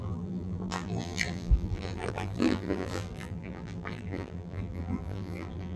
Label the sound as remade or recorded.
remade